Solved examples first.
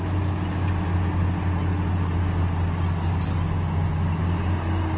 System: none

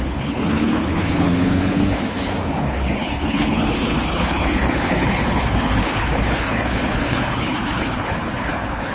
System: codec, HILCodec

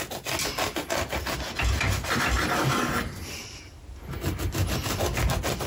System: none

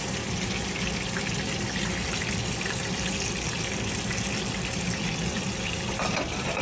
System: none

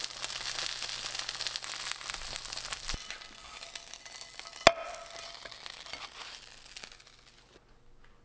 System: none